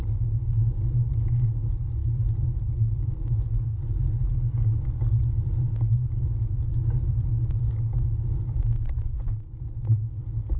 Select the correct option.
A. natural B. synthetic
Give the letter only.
A